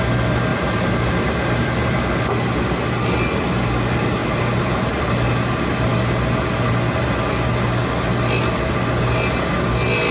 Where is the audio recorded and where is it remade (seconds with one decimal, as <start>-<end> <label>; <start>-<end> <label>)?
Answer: 0.0-0.5 recorded; 0.5-2.1 remade; 2.1-4.2 recorded; 4.2-5.0 remade; 5.0-10.1 recorded